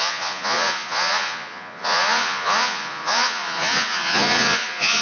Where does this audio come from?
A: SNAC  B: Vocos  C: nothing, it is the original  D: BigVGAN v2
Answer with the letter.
B